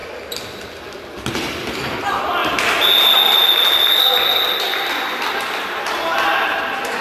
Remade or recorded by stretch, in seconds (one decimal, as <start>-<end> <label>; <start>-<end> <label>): 0.0-7.0 recorded